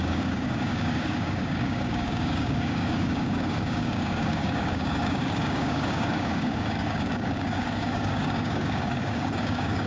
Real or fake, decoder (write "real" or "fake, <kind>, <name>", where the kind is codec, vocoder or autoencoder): fake, codec, DAC